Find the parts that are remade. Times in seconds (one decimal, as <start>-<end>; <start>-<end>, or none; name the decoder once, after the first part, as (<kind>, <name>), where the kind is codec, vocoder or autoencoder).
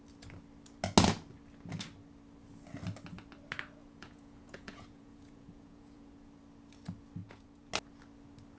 3.8-6.4 (vocoder, Vocos); 7.2-7.7